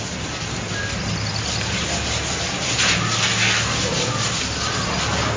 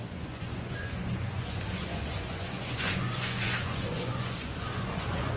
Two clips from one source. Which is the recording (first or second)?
first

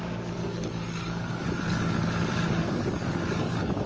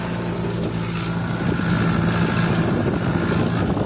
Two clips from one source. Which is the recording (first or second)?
second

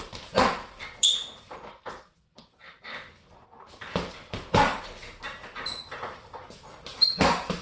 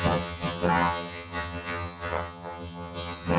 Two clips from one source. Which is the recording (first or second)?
first